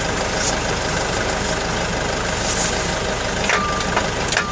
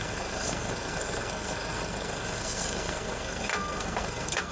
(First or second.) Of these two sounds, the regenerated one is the second